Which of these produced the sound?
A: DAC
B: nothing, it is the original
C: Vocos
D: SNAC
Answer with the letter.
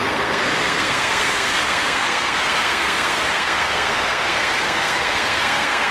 D